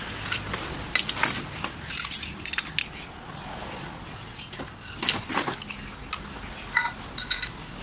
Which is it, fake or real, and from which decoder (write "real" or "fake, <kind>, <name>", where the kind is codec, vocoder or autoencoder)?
real